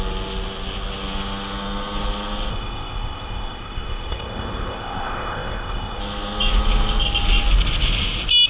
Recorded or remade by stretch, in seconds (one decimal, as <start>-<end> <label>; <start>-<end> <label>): 0.0-2.5 recorded; 2.5-6.0 remade; 6.0-8.5 recorded